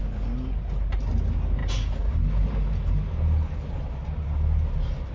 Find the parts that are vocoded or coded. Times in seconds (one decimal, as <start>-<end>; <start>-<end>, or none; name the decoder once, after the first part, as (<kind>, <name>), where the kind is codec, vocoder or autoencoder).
none